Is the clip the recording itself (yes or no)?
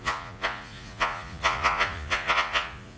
no